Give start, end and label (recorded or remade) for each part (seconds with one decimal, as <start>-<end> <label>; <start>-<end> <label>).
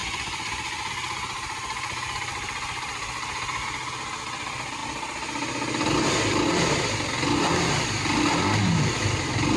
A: 0.0-0.9 remade; 0.9-9.6 recorded